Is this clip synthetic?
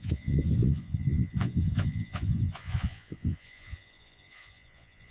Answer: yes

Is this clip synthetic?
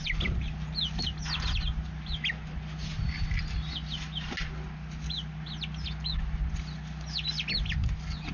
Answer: no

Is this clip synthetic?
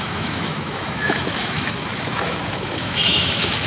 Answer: yes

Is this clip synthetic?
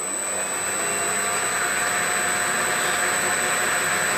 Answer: no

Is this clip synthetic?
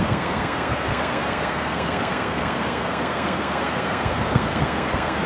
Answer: yes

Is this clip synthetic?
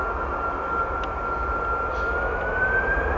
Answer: no